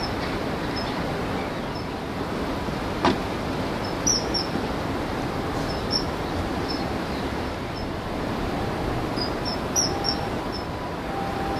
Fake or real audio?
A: real